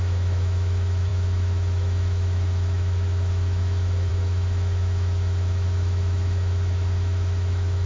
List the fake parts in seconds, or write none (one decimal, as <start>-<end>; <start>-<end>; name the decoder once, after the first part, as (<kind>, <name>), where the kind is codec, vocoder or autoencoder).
0.0-7.9 (autoencoder, DAC-VAE)